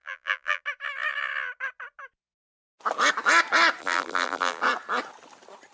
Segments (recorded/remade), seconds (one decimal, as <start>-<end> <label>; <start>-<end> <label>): 0.0-0.6 remade; 0.6-3.8 recorded; 3.8-4.6 remade; 4.6-5.7 recorded